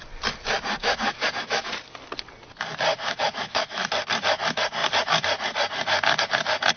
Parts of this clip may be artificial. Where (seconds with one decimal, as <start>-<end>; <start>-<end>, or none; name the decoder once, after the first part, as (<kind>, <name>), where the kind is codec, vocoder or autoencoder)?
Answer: 0.8-1.7 (autoencoder, DAC-VAE); 2.9-3.9

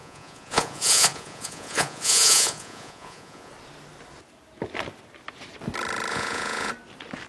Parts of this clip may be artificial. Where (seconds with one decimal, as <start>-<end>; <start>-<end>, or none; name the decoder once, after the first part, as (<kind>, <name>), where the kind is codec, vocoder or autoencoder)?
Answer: 0.0-3.5 (vocoder, Vocos); 6.1-6.7

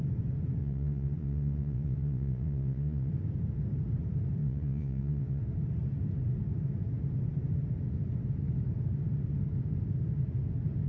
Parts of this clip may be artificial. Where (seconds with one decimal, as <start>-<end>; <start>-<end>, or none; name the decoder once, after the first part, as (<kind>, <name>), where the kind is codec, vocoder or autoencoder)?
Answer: 0.6-3.1 (vocoder, Vocos); 4.4-5.4

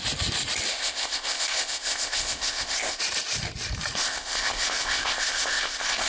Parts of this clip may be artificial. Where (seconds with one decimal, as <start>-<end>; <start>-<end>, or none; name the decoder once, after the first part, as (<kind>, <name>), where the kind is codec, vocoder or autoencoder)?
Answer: 0.7-3.0 (codec, ZipCodec); 4.0-6.1

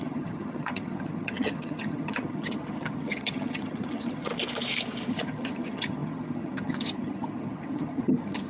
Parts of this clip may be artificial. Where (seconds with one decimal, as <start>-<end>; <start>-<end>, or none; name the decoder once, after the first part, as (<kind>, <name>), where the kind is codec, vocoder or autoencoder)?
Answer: 0.0-4.3 (vocoder, HiFi-GAN); 5.1-8.5

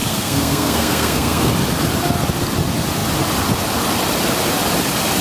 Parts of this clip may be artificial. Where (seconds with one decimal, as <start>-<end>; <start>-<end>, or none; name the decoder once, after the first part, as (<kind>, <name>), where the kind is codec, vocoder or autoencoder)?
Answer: 0.0-1.5 (codec, SNAC)

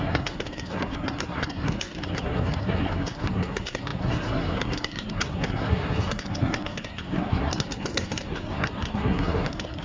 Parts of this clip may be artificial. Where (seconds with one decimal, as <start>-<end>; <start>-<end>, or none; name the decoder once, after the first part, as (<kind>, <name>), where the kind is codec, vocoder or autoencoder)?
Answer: 0.0-9.8 (codec, SNAC)

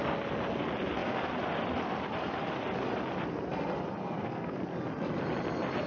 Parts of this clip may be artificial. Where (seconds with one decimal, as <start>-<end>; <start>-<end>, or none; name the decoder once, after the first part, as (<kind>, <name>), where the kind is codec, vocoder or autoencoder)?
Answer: 4.0-4.6 (codec, SNAC)